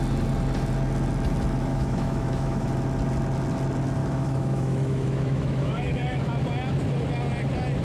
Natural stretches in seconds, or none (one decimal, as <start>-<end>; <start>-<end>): 0.0-1.7; 2.7-4.0; 6.3-7.8